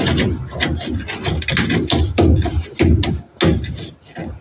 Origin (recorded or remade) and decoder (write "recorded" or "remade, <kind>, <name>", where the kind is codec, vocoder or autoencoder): recorded